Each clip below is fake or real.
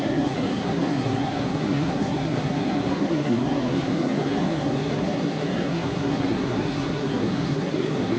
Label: fake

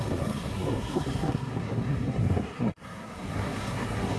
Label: fake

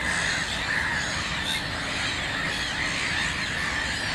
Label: real